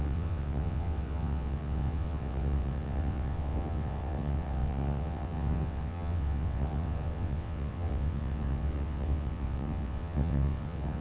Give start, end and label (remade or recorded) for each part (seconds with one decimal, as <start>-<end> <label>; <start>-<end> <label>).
0.0-11.0 remade